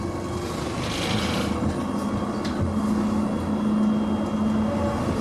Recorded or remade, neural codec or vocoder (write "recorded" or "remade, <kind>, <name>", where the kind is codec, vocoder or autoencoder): recorded